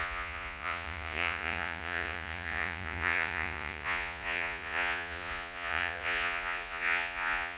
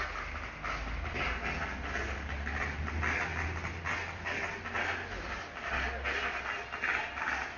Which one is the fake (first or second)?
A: first